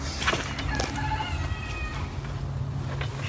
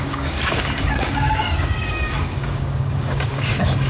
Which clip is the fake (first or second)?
second